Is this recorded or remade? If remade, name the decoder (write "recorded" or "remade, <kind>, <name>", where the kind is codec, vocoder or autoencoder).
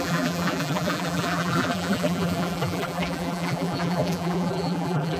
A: remade, vocoder, BigVGAN v2